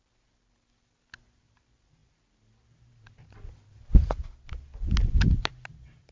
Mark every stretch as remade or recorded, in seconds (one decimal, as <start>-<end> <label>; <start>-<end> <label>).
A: 0.0-6.1 recorded

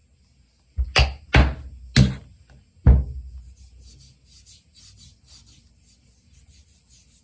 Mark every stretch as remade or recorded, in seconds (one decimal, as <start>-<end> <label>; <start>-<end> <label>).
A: 0.0-7.2 recorded

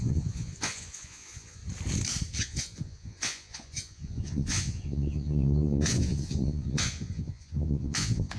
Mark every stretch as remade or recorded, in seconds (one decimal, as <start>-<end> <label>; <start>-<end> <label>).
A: 0.0-1.6 remade; 1.6-2.4 recorded; 2.4-8.4 remade

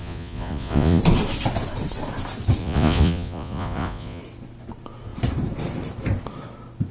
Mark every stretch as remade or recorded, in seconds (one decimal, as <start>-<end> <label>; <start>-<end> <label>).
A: 0.0-1.0 remade; 1.0-2.6 recorded; 2.6-4.2 remade; 4.2-6.9 recorded

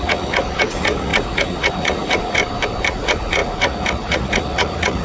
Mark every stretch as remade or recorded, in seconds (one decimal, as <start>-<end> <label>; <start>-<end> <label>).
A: 0.0-2.4 remade; 2.4-2.9 recorded; 2.9-5.0 remade

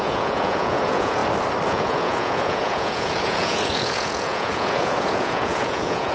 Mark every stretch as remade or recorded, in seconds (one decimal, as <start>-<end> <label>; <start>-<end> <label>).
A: 0.0-1.2 remade; 1.2-1.7 recorded; 1.7-6.1 remade

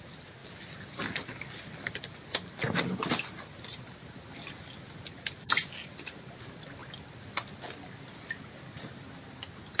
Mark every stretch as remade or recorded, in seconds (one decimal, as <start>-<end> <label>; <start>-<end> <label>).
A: 0.0-9.8 recorded

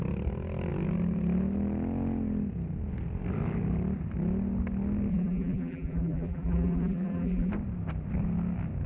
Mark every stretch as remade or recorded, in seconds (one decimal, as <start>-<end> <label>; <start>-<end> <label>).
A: 0.0-5.1 recorded; 5.1-7.5 remade; 7.5-8.9 recorded